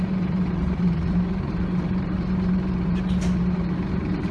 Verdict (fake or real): fake